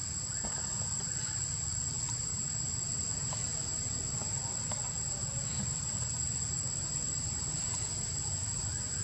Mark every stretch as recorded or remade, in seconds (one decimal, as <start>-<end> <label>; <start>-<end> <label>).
0.0-9.0 recorded